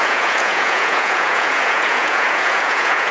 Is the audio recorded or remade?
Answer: remade